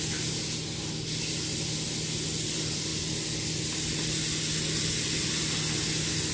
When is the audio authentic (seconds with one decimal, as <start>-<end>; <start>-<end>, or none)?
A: 0.0-6.3